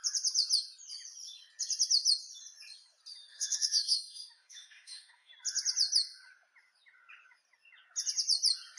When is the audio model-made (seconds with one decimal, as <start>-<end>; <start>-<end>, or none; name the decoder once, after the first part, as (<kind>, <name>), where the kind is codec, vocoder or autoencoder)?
3.3-5.3 (autoencoder, DAC-VAE)